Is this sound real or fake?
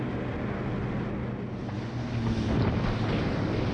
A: real